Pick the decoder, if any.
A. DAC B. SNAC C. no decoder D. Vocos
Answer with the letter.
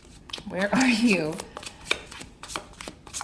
D